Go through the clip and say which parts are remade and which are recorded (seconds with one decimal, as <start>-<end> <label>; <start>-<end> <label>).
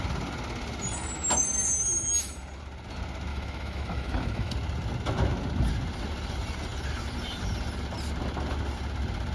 0.0-3.3 recorded; 3.3-4.5 remade; 4.5-9.3 recorded